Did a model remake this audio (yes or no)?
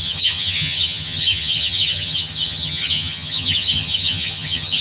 yes